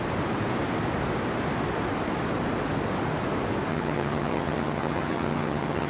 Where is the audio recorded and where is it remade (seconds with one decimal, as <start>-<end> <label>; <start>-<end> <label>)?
0.0-3.7 recorded; 3.7-5.9 remade